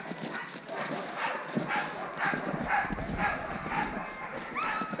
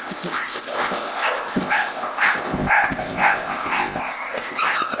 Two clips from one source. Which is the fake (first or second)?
second